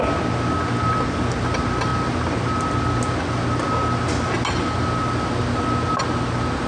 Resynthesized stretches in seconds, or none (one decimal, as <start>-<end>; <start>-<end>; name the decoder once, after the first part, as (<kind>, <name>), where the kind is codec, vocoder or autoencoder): none